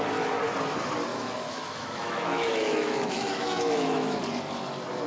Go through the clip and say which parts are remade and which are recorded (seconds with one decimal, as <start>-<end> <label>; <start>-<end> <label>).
0.0-1.1 recorded; 1.1-4.2 remade; 4.2-5.1 recorded